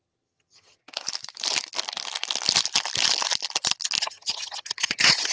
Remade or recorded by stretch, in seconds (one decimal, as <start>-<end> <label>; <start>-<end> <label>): 0.0-0.8 remade; 0.8-4.0 recorded; 4.0-5.3 remade